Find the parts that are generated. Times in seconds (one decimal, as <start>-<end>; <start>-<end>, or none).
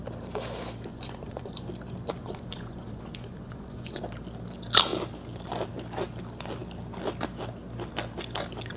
0.9-1.7; 2.2-4.0